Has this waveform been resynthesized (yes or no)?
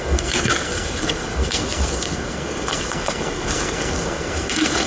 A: yes